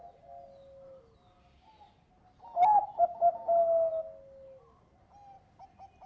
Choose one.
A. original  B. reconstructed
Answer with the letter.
A